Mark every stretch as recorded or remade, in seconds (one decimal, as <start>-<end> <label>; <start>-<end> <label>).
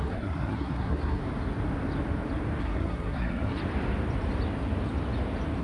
0.0-1.2 remade; 1.2-2.6 recorded; 2.6-3.6 remade; 3.6-5.6 recorded